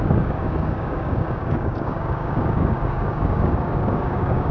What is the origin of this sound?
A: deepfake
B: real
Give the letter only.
A